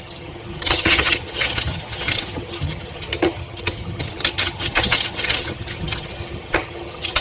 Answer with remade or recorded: remade